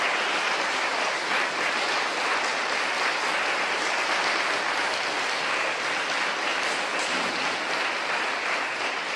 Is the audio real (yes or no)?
yes